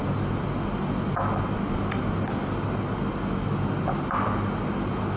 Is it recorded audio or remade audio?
recorded